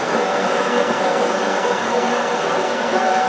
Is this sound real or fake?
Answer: fake